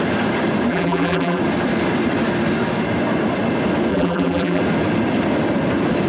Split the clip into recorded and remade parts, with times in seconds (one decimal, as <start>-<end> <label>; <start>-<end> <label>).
0.0-0.7 recorded; 0.7-1.4 remade; 1.4-3.9 recorded; 3.9-4.6 remade; 4.6-6.1 recorded